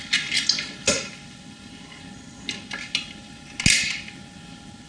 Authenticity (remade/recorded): recorded